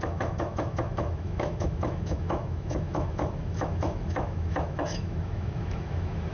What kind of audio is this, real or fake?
fake